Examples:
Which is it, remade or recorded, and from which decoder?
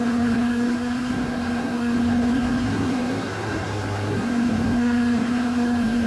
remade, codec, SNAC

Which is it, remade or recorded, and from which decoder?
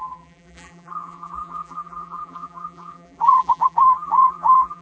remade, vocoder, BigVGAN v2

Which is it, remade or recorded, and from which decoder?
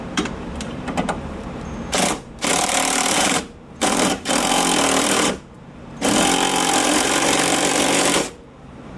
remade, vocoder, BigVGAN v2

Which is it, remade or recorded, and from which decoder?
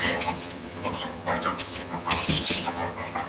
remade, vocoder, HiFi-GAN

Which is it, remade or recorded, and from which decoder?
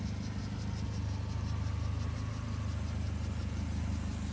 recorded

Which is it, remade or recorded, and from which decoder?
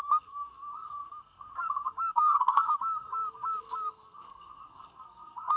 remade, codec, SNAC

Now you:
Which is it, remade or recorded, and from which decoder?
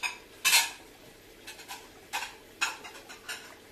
recorded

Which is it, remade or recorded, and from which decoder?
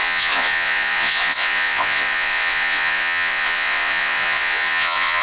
remade, vocoder, Vocos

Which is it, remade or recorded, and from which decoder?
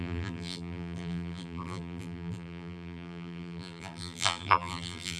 remade, vocoder, BigVGAN v2